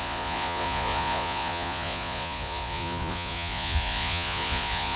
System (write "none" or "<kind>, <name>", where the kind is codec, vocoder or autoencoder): vocoder, Vocos